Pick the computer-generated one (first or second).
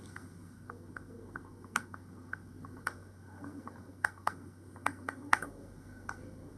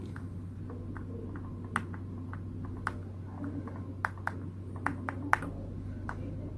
first